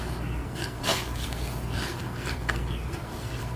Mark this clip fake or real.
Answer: fake